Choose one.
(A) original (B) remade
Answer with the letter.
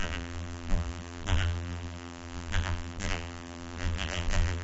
B